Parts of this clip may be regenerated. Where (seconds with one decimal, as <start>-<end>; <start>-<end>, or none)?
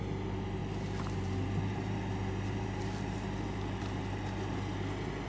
none